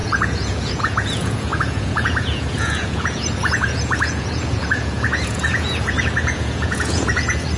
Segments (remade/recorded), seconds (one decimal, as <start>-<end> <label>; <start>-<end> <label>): 0.0-7.6 remade